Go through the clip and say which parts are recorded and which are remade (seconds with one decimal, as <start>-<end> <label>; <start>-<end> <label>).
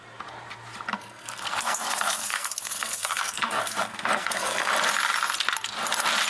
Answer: 0.0-0.9 recorded; 0.9-4.7 remade; 4.7-6.3 recorded